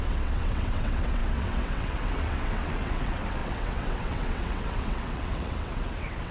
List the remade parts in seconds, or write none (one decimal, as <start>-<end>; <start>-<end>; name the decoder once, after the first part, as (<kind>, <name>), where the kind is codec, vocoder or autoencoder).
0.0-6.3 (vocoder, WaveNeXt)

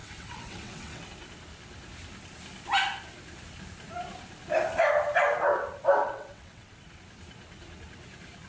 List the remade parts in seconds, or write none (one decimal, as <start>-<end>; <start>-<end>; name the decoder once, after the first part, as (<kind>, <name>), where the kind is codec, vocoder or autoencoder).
0.0-1.1 (vocoder, WaveNeXt); 6.0-6.9

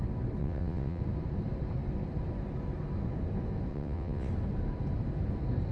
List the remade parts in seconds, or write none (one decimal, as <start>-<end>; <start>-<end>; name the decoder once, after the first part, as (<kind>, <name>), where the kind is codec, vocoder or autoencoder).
0.4-1.0 (vocoder, WaveNeXt); 3.7-4.3

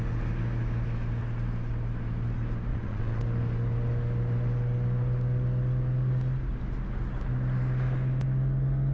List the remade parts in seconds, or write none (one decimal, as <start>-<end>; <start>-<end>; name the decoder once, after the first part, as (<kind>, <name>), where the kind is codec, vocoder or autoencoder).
2.7-3.2 (vocoder, WaveNeXt)

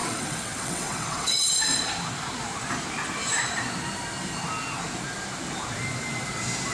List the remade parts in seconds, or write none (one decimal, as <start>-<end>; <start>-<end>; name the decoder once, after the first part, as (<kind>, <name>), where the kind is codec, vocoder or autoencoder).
0.0-1.4 (vocoder, WaveNeXt)

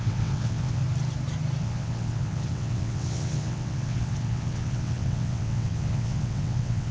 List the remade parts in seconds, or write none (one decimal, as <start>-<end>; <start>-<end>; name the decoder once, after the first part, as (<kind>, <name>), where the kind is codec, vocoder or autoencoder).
0.0-0.8 (vocoder, WaveNeXt); 1.6-6.9

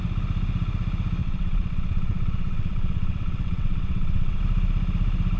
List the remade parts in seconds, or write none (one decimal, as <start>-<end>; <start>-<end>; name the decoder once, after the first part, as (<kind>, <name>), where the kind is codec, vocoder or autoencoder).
1.2-4.4 (vocoder, WaveNeXt)